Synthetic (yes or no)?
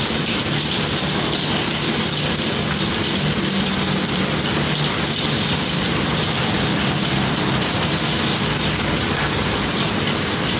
no